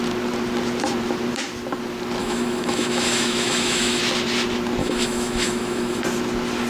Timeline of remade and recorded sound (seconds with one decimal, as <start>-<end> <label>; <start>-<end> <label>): 0.0-2.2 recorded; 2.2-4.0 remade; 4.0-4.8 recorded; 4.8-6.0 remade; 6.0-6.7 recorded